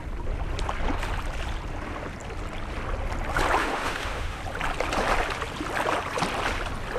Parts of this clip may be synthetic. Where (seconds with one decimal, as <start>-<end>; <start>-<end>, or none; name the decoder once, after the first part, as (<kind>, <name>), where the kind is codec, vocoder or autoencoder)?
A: 3.6-4.4 (autoencoder, DAC-VAE)